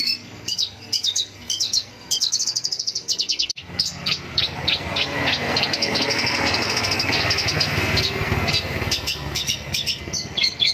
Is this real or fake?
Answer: fake